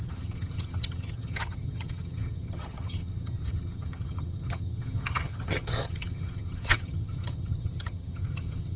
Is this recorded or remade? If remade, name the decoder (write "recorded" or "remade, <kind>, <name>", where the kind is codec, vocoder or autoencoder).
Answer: remade, vocoder, HiFi-GAN